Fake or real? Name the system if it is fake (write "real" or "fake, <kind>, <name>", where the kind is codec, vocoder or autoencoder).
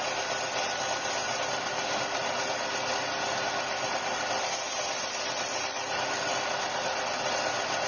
real